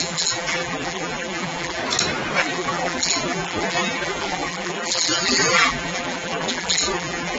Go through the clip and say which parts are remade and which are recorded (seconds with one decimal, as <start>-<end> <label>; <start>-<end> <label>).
0.0-1.8 remade; 1.8-2.4 recorded; 2.4-7.4 remade